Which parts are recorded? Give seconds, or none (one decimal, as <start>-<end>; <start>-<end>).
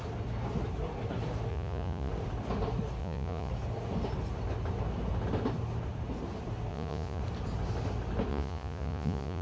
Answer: 0.0-1.5; 2.1-3.0; 3.5-6.7; 7.2-8.3